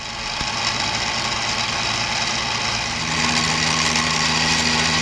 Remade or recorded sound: recorded